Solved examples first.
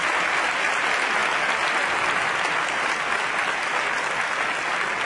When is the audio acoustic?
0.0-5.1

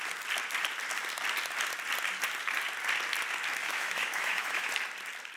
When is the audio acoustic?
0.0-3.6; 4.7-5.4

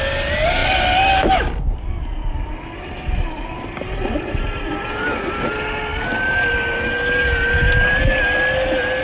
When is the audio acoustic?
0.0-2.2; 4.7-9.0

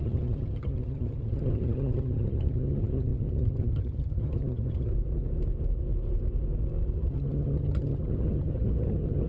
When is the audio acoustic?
4.9-7.1

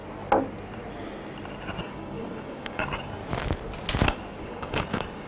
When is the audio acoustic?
0.0-1.8; 3.2-4.4

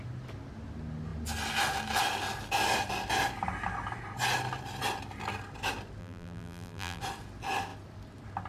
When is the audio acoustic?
0.0-6.0; 7.0-8.5